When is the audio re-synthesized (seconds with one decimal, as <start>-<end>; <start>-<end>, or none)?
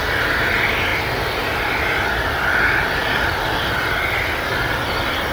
none